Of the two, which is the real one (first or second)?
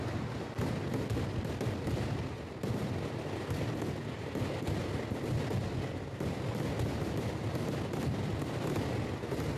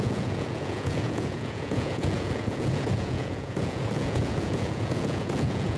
first